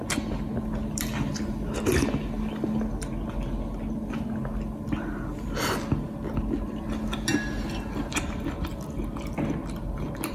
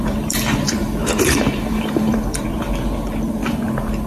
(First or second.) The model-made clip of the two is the second